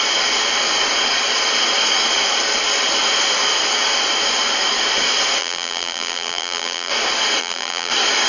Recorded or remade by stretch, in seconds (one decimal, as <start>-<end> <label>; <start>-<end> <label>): 0.0-5.4 recorded; 5.4-6.9 remade; 6.9-7.4 recorded; 7.4-7.9 remade; 7.9-8.3 recorded